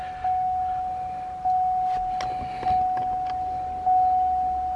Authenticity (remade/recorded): recorded